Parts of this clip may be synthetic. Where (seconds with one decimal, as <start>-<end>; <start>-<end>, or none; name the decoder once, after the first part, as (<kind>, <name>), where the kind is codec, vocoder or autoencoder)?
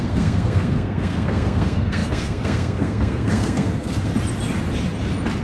0.0-4.1 (codec, SNAC)